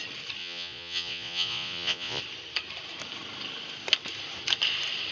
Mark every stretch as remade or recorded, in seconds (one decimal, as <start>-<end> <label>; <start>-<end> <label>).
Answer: 0.0-0.4 recorded; 0.4-2.2 remade; 2.2-5.1 recorded